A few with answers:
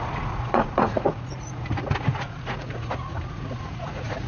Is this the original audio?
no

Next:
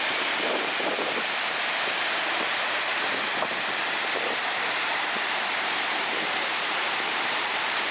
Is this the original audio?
no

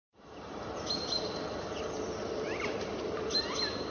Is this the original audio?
no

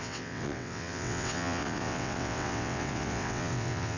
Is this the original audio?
no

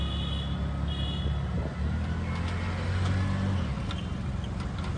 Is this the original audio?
yes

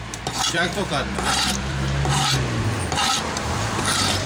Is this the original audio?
no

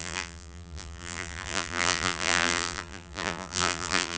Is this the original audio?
no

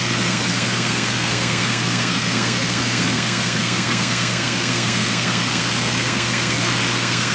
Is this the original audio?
no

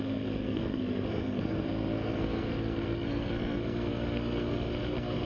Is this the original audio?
no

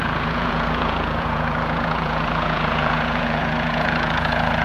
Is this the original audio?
no